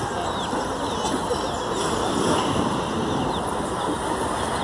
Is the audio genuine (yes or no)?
yes